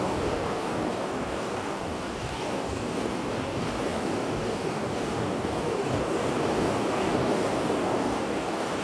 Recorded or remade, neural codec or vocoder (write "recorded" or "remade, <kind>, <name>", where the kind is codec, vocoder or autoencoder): remade, codec, DAC